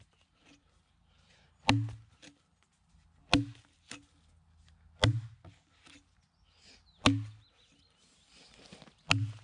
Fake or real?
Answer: real